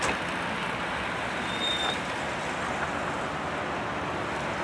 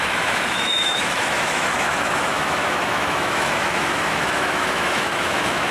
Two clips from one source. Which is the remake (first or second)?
second